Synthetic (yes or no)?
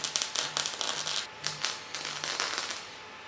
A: no